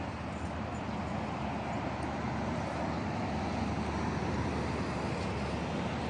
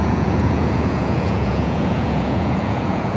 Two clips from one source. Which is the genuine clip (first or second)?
first